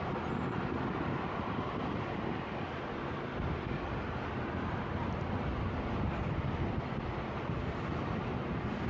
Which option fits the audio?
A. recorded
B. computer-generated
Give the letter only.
A